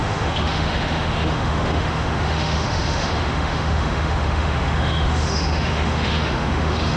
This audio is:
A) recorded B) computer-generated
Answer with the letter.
B